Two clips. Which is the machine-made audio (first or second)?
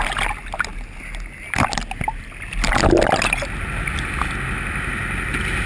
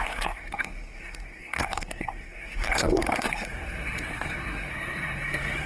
second